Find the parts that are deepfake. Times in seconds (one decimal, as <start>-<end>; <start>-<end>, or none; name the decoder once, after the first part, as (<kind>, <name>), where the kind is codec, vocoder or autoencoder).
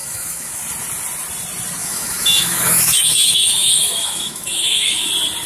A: 0.0-0.6 (autoencoder, DAC-VAE); 1.8-5.1